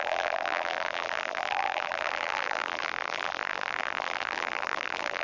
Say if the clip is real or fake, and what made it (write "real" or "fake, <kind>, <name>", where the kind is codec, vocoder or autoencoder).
fake, vocoder, BigVGAN v2